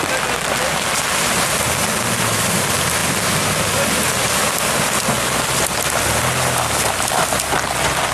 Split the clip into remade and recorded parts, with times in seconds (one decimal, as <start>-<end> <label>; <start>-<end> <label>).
0.0-8.1 recorded